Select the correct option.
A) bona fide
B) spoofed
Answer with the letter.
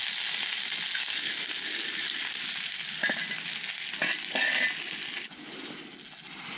A